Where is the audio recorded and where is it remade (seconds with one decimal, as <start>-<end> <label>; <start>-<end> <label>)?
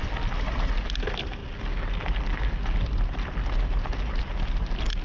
0.0-5.0 recorded